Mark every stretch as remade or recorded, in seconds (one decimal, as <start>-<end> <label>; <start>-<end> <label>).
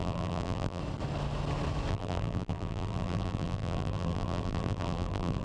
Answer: 0.0-0.8 remade; 0.8-1.9 recorded; 1.9-5.4 remade